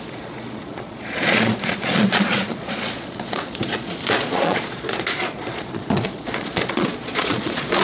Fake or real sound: fake